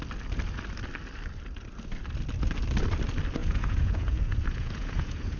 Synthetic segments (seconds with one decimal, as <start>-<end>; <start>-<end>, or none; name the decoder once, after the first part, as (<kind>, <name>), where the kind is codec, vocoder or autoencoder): 3.4-5.4 (vocoder, Vocos)